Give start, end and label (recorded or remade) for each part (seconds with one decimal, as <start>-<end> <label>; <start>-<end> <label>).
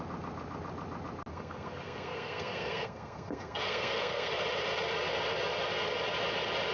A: 0.0-1.3 recorded; 1.3-4.3 remade; 4.3-6.7 recorded